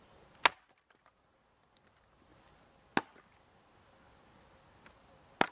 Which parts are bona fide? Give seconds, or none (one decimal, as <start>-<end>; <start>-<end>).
0.0-5.5